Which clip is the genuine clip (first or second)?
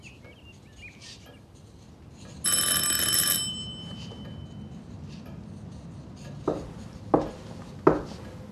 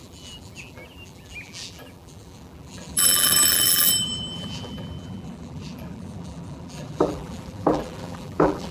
first